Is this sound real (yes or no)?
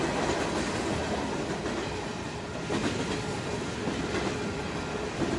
yes